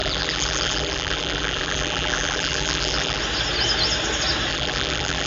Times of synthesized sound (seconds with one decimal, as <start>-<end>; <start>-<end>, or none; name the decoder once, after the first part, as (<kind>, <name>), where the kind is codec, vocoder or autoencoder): 0.0-3.2 (vocoder, BigVGAN v2); 4.5-5.3